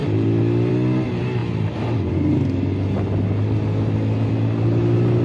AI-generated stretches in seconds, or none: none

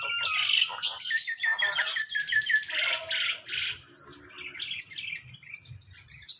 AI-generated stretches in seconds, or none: none

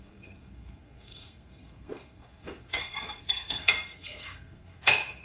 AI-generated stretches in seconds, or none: 0.0-5.2 (codec, SNAC)

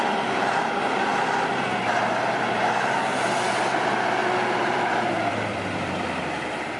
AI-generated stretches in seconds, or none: 0.0-1.1 (vocoder, BigVGAN v2); 2.3-6.8

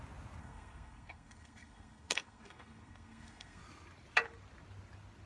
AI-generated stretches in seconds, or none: 0.4-3.6 (codec, SNAC)

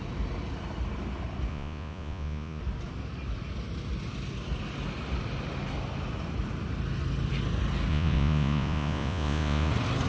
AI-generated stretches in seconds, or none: 1.5-2.6 (vocoder, Vocos); 7.9-9.7

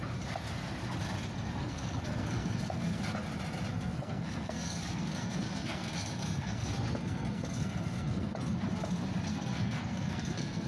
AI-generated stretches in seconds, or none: 1.6-3.0 (codec, SNAC); 3.7-8.4; 9.3-10.7